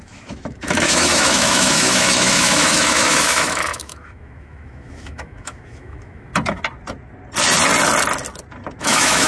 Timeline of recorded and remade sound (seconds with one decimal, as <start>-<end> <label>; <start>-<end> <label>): 0.0-6.3 remade; 6.3-8.8 recorded; 8.8-9.3 remade